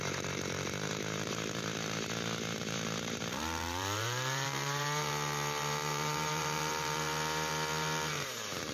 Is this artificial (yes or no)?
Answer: yes